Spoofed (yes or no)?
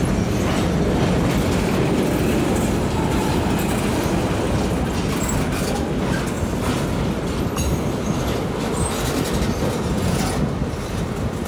no